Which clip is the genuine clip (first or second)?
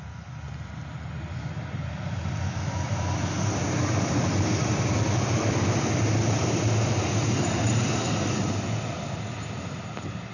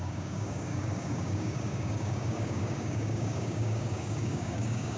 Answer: first